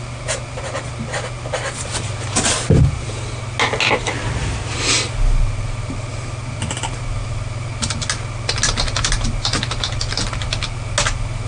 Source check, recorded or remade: recorded